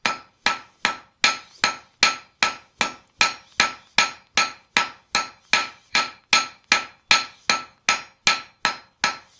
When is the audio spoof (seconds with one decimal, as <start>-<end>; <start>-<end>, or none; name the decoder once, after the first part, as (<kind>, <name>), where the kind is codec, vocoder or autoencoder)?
5.6-6.2 (vocoder, BigVGAN v2)